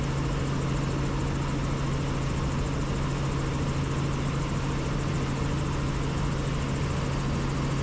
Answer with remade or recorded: recorded